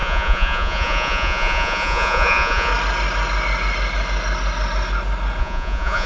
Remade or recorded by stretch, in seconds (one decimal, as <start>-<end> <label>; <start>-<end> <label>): 0.0-2.7 remade; 2.7-5.4 recorded; 5.4-6.1 remade